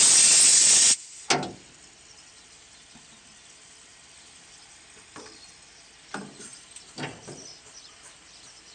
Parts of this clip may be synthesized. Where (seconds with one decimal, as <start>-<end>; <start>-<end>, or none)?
0.5-1.3